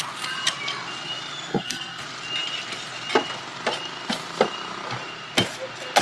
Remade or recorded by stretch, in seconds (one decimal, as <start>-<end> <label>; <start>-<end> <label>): 0.0-1.5 recorded; 1.5-2.0 remade; 2.0-6.0 recorded